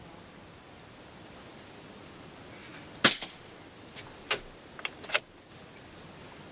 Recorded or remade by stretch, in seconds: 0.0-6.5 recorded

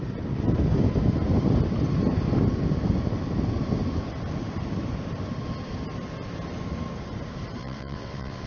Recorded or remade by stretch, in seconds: 0.0-7.6 recorded; 7.6-8.5 remade

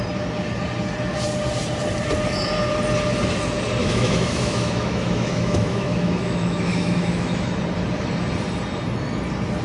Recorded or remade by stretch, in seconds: 0.0-3.8 recorded; 3.8-7.5 remade; 7.5-9.6 recorded

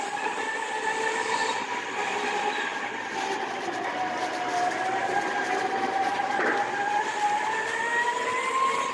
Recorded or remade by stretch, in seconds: 0.0-8.9 recorded